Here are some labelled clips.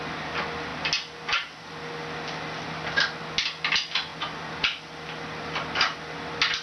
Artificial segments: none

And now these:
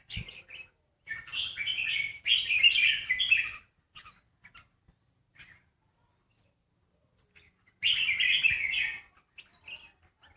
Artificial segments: 2.1-4.8 (vocoder, BigVGAN v2)

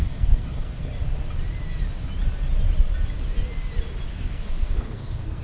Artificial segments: 0.0-0.9 (codec, SNAC); 4.1-5.4

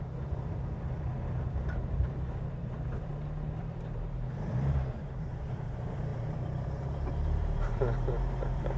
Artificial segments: 0.0-3.1 (vocoder, BigVGAN v2); 3.6-8.8

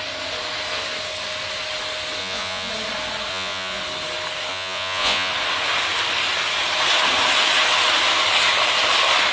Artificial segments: 2.2-2.7 (vocoder, Vocos); 3.3-3.8; 4.5-5.3

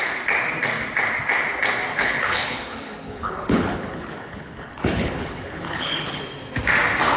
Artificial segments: 1.9-6.2 (codec, HILCodec)

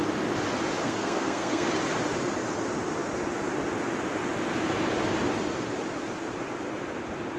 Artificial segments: 0.8-1.8 (codec, SNAC)